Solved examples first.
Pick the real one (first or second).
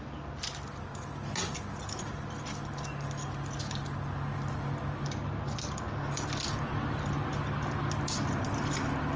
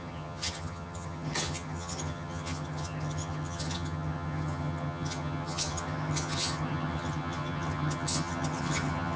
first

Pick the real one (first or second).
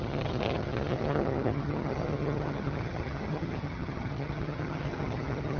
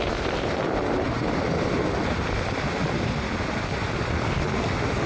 second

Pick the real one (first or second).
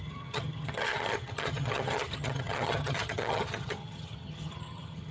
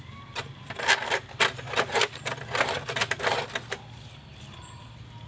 second